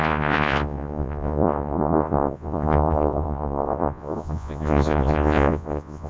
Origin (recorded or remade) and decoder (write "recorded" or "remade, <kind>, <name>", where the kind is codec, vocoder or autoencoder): remade, vocoder, Vocos